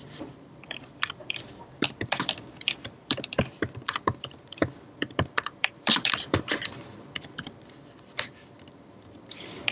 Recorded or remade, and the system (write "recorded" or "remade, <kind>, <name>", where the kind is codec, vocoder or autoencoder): remade, vocoder, BigVGAN v2